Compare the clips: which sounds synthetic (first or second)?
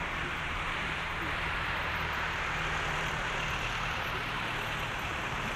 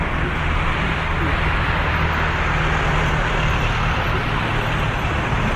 first